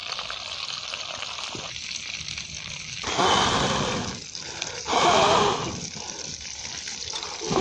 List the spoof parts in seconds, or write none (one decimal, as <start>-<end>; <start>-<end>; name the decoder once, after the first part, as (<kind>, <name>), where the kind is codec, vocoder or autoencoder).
0.0-3.2 (vocoder, BigVGAN v2); 4.4-6.7